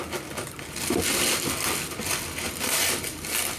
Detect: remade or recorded recorded